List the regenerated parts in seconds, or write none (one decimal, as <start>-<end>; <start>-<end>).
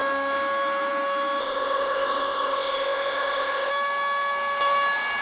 1.4-3.7